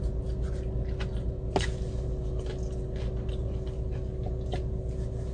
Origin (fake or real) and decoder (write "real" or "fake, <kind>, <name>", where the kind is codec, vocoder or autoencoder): real